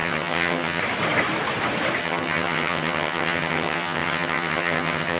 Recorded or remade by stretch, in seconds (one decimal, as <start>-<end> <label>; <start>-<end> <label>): 0.0-0.8 remade; 0.8-2.0 recorded; 2.0-5.2 remade